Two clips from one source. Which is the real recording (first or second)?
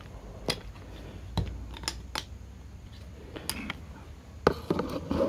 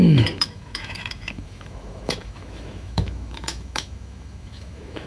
first